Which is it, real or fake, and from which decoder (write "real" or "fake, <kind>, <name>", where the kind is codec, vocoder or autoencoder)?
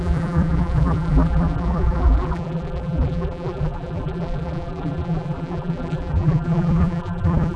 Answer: fake, vocoder, BigVGAN v2